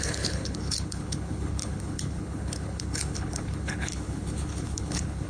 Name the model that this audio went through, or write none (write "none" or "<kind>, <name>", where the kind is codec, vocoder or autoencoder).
codec, HILCodec